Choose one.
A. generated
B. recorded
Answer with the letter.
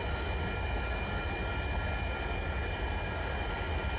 B